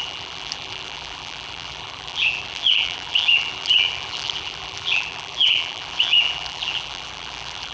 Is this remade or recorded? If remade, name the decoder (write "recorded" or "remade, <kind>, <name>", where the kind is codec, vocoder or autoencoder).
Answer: remade, vocoder, BigVGAN v2